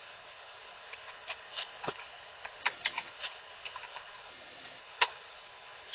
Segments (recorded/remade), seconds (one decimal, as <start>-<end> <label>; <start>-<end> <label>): 0.0-2.6 remade; 2.6-3.1 recorded; 3.1-4.3 remade; 4.3-4.8 recorded; 4.8-5.9 remade